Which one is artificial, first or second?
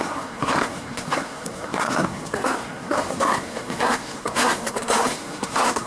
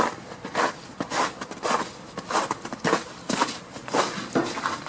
first